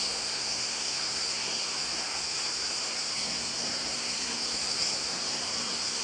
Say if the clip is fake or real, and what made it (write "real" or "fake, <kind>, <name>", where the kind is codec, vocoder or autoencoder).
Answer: fake, codec, SNAC